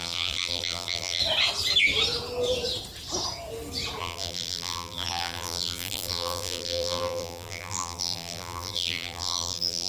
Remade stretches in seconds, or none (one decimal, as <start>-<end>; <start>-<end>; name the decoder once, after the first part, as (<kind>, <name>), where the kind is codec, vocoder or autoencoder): 0.0-1.2 (vocoder, BigVGAN v2); 4.0-9.9